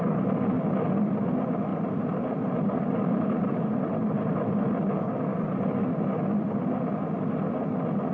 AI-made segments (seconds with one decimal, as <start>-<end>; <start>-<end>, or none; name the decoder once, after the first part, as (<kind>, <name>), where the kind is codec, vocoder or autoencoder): 1.7-4.3 (vocoder, BigVGAN v2)